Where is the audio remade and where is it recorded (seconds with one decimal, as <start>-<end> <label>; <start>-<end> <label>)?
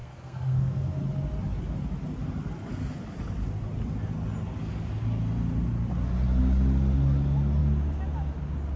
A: 0.0-1.0 remade; 1.0-8.8 recorded